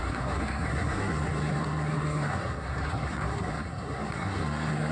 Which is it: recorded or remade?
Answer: remade